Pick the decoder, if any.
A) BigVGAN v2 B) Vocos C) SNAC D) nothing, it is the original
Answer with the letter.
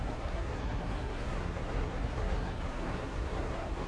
C